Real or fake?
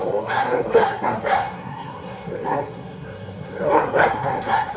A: fake